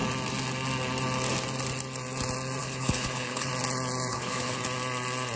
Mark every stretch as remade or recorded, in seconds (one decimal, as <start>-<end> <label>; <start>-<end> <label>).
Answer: 0.0-2.6 recorded; 2.6-3.5 remade; 3.5-4.1 recorded; 4.1-4.6 remade; 4.6-5.4 recorded

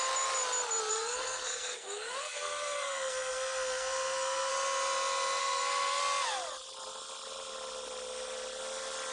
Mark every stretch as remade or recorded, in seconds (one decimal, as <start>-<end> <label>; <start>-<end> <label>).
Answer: 0.0-0.9 recorded; 0.9-4.5 remade; 4.5-5.4 recorded; 5.4-6.0 remade; 6.0-9.1 recorded